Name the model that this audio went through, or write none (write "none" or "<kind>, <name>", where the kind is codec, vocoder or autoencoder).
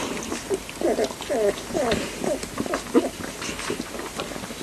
none